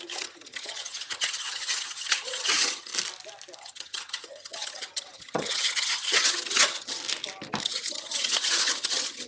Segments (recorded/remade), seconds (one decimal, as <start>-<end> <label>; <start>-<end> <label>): 0.0-2.9 remade; 2.9-3.6 recorded; 3.6-7.0 remade; 7.0-7.6 recorded; 7.6-9.3 remade